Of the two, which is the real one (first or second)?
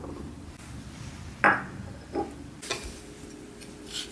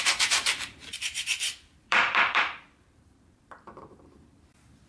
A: first